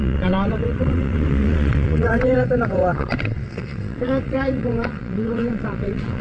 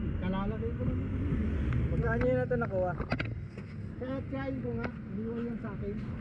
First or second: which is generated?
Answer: first